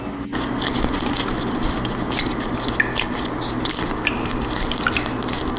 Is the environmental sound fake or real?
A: real